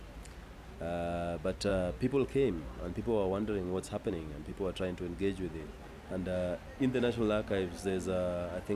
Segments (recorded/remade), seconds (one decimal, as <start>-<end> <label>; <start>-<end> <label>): 0.0-8.8 recorded